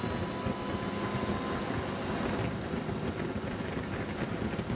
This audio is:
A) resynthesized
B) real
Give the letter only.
B